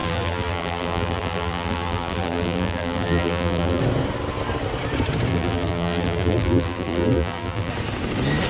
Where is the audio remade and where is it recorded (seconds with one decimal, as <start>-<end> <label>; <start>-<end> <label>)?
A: 0.0-3.8 remade; 3.8-5.3 recorded; 5.3-7.7 remade; 7.7-8.5 recorded